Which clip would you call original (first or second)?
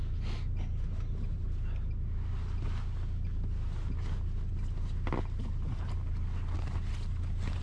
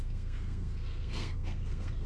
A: first